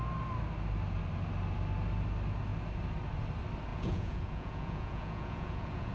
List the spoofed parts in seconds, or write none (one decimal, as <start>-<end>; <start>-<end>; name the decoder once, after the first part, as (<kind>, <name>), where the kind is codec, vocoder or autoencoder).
3.7-5.9 (vocoder, Vocos)